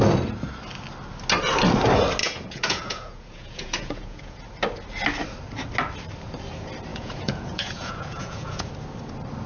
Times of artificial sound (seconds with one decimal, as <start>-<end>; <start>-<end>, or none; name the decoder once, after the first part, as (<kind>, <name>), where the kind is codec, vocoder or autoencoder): 2.2-4.4 (vocoder, Vocos); 6.9-8.7